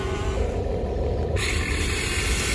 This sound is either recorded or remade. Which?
recorded